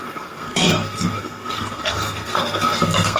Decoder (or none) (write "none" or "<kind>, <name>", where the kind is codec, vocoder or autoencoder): codec, SNAC